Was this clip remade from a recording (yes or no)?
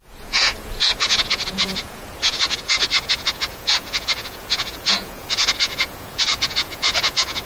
yes